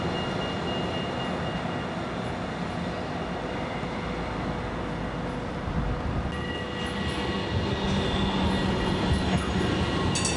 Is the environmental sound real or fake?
real